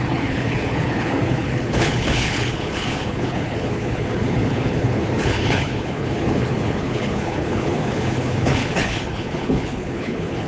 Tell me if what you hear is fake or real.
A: fake